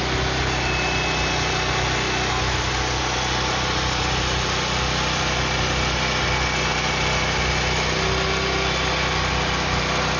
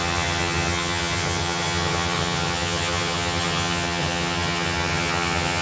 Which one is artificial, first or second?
second